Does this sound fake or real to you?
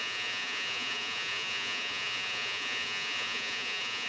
fake